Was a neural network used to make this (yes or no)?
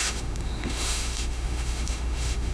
yes